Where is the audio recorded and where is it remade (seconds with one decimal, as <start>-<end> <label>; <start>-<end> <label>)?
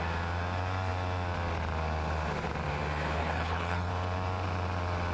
0.0-3.2 recorded; 3.2-3.9 remade; 3.9-5.1 recorded